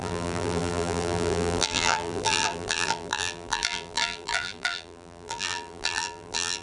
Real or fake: fake